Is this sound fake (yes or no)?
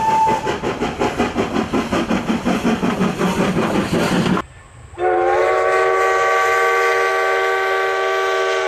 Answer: no